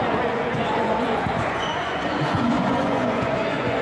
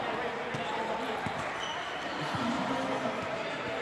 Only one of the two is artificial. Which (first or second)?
first